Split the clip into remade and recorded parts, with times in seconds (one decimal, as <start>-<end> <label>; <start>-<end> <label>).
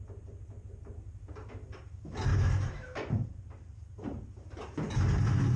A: 0.0-2.3 recorded; 2.3-3.8 remade; 3.8-5.6 recorded